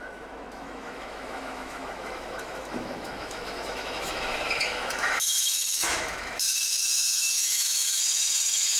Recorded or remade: remade